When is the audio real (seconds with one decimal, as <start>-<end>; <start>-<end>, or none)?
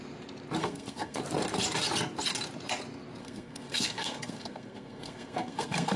0.0-0.6; 1.2-3.2